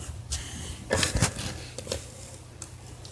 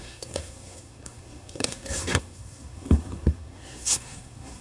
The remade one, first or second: second